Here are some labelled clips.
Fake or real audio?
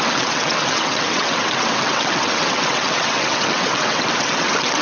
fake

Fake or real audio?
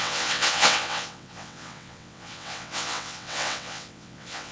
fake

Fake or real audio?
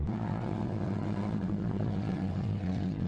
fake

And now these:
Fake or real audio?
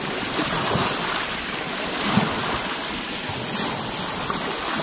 real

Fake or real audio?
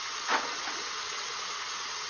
fake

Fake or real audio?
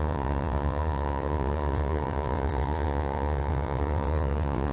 fake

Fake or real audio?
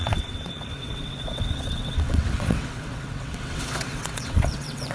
fake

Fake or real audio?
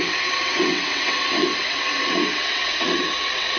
fake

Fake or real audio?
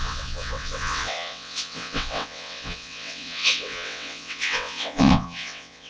fake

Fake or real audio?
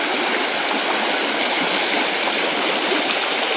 real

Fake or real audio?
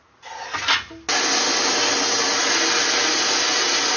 real